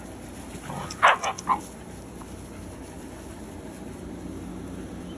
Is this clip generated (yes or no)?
no